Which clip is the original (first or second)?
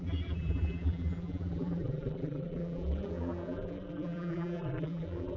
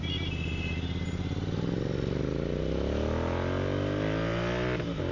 second